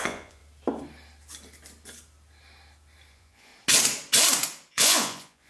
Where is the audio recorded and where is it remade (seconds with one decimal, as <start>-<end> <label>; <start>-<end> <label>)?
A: 0.0-0.4 remade; 0.4-3.1 recorded; 3.1-3.5 remade; 3.5-4.7 recorded; 4.7-5.5 remade